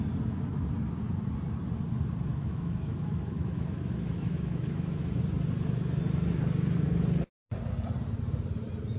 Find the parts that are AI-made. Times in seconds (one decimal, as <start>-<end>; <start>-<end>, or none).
2.3-5.1